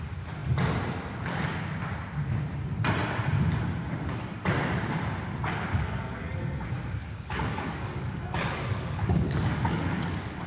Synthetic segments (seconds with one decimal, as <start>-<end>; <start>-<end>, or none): 5.7-6.4; 7.0-10.5